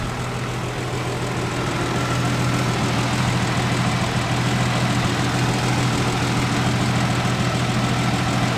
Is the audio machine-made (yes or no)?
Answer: no